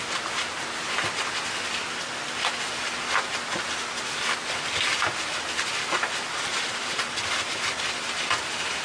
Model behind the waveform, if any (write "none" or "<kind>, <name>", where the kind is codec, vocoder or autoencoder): none